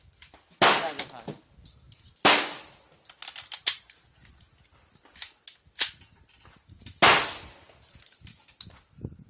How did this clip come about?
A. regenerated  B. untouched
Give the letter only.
B